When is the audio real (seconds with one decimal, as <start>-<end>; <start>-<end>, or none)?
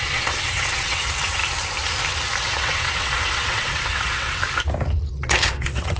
1.4-2.4; 4.4-5.1